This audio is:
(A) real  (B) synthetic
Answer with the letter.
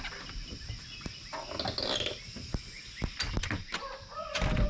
A